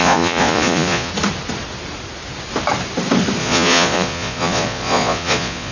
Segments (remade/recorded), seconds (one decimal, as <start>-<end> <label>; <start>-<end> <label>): 0.0-1.1 remade; 1.1-3.4 recorded; 3.4-5.7 remade